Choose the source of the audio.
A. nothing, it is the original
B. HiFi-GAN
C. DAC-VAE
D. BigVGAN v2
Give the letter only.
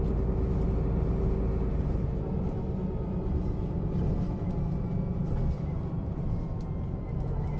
A